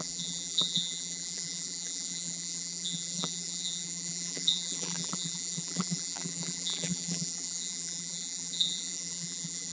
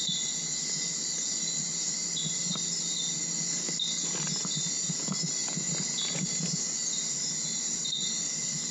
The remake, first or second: first